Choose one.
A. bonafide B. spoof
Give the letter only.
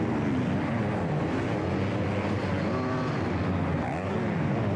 A